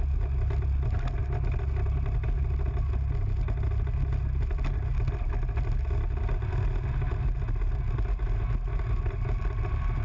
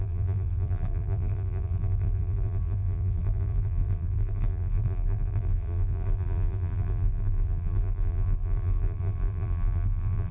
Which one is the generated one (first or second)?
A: second